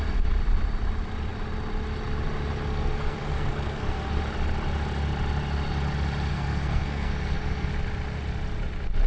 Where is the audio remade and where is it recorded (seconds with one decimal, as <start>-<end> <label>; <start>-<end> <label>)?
0.0-2.7 recorded; 2.7-4.2 remade; 4.2-6.3 recorded; 6.3-7.7 remade; 7.7-9.1 recorded